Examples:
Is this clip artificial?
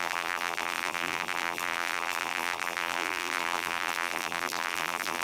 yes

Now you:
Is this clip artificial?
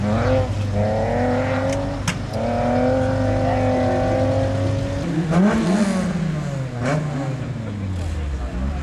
no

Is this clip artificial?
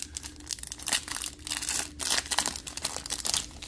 no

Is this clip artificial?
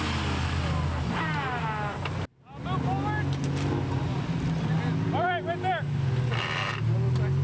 no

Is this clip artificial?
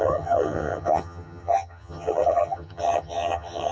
yes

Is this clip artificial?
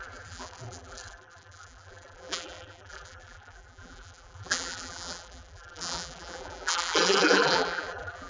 yes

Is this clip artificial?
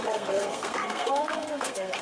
yes